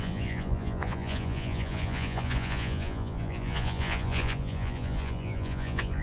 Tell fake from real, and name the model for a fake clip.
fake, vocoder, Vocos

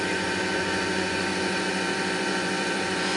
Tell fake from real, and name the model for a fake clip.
fake, vocoder, Vocos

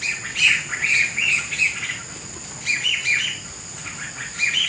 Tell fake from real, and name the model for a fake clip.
real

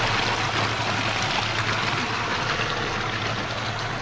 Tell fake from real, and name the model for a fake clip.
real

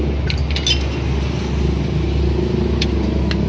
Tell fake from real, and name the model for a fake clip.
real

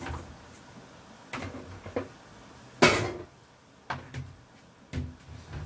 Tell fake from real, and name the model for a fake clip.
real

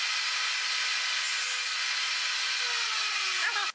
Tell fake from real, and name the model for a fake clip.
real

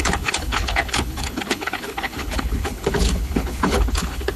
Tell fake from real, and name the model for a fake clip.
fake, codec, HILCodec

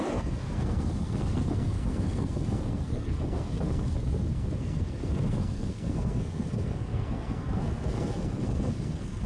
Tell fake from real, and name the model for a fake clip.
fake, codec, SNAC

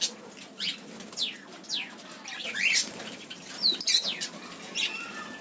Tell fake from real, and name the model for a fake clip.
real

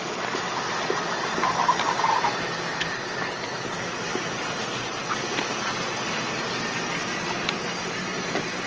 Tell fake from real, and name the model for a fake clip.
real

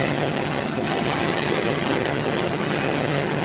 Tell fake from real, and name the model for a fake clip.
fake, vocoder, HiFi-GAN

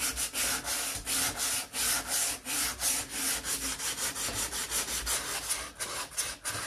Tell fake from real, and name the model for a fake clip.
real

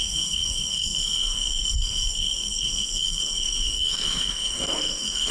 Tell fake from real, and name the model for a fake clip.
fake, codec, SNAC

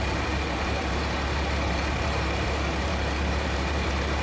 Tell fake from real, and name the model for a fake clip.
fake, vocoder, BigVGAN v2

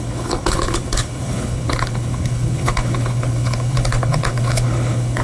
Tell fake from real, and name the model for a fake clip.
fake, codec, HILCodec